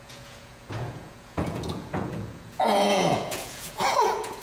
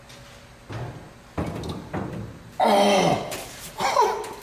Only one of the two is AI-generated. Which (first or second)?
first